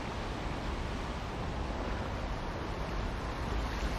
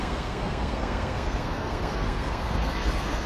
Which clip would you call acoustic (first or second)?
first